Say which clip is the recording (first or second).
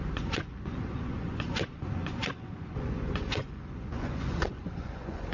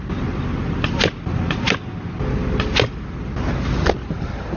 second